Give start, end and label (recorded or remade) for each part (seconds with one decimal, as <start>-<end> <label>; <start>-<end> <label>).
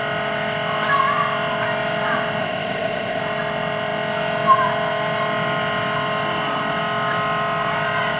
0.0-2.4 recorded; 2.4-3.2 remade; 3.2-8.2 recorded